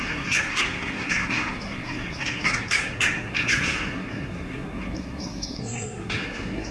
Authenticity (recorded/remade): remade